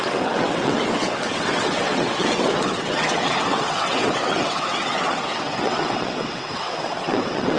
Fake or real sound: fake